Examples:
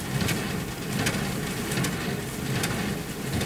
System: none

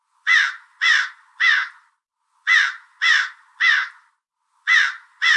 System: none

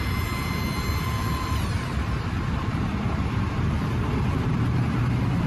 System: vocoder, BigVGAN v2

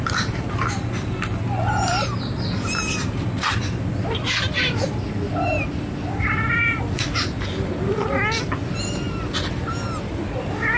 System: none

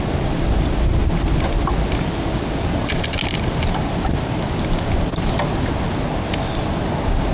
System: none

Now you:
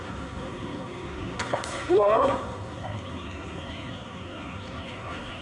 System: codec, SNAC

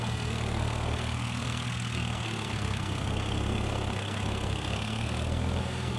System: codec, SNAC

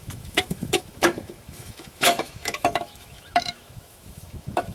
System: autoencoder, DAC-VAE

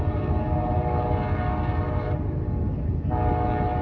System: none